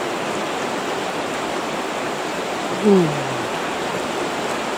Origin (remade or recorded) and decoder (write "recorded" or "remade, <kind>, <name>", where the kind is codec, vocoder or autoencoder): recorded